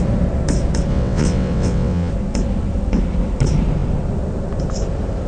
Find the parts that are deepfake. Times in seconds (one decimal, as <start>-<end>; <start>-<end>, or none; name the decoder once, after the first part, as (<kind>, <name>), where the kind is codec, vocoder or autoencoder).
0.9-2.1 (vocoder, WaveNeXt)